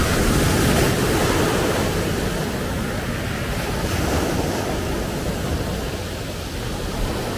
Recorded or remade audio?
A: recorded